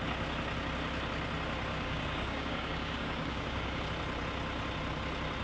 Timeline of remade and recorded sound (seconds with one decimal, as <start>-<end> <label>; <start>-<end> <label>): 0.0-1.7 recorded; 1.7-3.8 remade; 3.8-5.4 recorded